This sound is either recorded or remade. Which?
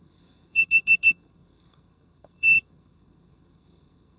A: remade